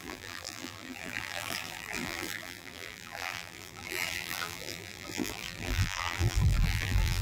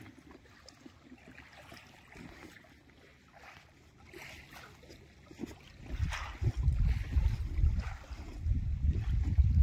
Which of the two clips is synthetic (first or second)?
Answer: first